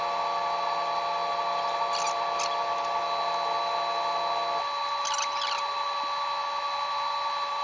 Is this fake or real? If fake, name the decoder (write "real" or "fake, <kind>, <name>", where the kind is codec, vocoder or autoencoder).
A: real